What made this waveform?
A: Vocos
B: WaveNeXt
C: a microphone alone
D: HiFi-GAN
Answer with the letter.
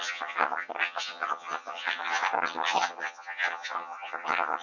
D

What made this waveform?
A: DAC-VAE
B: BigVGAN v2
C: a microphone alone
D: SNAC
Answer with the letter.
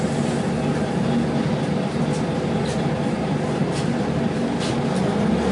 C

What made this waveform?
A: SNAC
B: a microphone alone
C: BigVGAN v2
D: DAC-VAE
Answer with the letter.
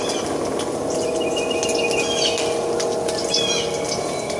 B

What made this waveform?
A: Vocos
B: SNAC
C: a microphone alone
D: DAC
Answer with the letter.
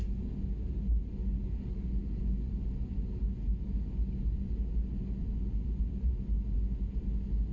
C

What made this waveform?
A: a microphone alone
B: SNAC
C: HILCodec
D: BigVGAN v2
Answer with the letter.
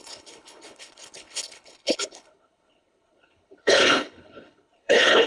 C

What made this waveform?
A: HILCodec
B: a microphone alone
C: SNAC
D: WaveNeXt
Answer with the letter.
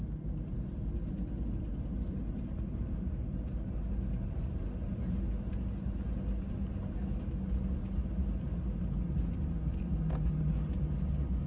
B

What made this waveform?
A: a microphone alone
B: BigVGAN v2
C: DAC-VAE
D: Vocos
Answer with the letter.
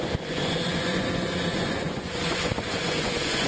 D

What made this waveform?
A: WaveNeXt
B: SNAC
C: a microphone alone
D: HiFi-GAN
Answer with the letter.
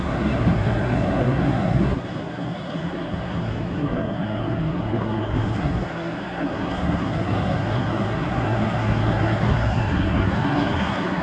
B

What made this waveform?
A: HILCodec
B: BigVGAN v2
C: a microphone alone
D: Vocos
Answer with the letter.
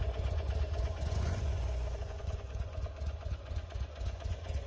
D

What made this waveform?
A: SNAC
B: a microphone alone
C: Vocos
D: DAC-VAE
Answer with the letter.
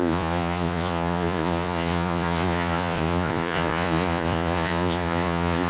C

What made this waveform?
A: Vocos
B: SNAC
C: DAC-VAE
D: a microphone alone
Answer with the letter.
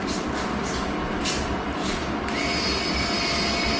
D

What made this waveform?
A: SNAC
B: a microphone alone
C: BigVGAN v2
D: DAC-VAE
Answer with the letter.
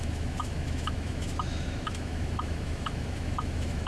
D